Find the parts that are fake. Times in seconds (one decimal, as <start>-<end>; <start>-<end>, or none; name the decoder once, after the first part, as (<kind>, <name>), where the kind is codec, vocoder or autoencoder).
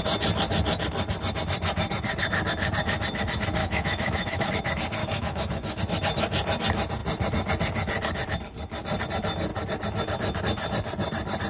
3.6-4.5 (autoencoder, DAC-VAE); 5.0-5.8